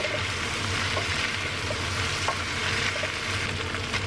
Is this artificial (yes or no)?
no